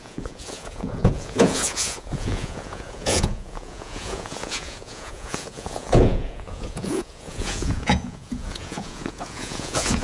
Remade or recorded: remade